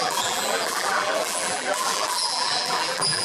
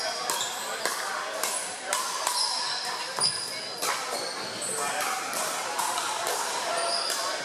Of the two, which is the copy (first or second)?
first